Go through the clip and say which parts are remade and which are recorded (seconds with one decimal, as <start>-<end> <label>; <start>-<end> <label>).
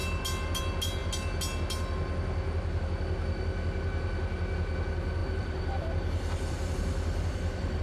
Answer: 0.0-5.2 recorded; 5.2-7.8 remade